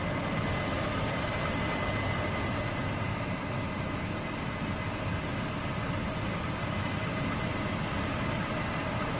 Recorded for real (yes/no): yes